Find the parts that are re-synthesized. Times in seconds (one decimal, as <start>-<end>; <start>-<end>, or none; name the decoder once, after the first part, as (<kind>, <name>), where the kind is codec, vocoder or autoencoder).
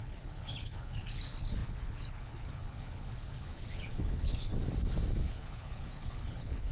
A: 0.0-4.5 (codec, HILCodec); 5.2-6.7